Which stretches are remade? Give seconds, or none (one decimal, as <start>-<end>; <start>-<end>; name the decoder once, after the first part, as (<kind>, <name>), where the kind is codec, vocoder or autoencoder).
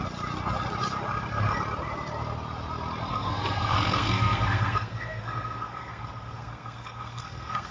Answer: 3.1-7.7 (codec, SNAC)